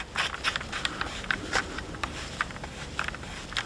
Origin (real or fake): real